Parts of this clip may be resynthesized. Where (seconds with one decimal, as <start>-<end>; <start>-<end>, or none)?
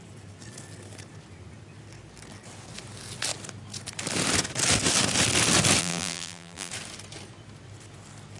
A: 5.8-6.7